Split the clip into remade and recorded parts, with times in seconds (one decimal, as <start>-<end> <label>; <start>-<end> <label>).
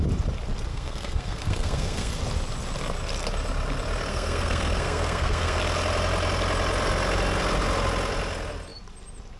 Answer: 0.0-0.7 recorded; 0.7-2.2 remade; 2.2-4.1 recorded; 4.1-5.6 remade; 5.6-9.4 recorded